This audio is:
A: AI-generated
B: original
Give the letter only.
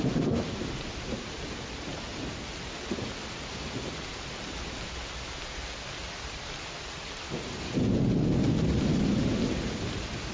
B